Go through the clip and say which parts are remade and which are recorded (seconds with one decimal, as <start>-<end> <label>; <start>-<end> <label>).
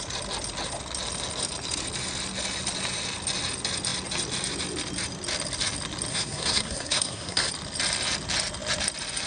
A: 0.0-6.1 recorded; 6.1-7.5 remade; 7.5-9.3 recorded